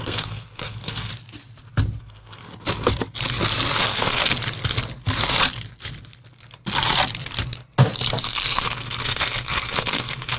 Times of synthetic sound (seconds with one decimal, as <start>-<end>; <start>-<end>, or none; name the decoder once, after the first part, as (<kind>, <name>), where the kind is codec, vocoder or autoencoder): 0.0-1.1 (codec, SNAC); 2.0-2.4; 3.8-4.3; 8.2-10.4